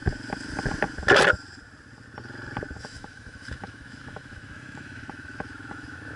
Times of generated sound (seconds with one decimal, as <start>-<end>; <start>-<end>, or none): 2.8-6.2